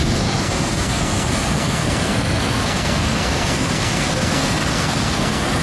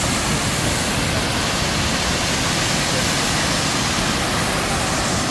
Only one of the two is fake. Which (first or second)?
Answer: first